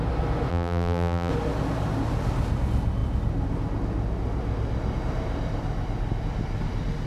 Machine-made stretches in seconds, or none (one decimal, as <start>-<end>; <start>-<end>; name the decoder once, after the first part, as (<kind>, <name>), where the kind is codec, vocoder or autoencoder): 0.5-1.3 (vocoder, BigVGAN v2)